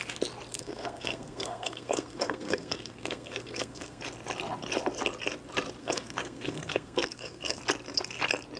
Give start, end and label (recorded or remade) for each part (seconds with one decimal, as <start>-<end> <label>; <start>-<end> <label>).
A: 0.0-0.5 recorded; 0.5-4.0 remade; 4.0-5.8 recorded; 5.8-7.6 remade; 7.6-8.6 recorded

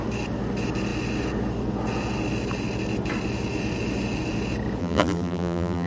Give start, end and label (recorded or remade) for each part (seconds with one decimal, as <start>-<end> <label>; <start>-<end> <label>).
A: 0.0-4.8 recorded; 4.8-5.9 remade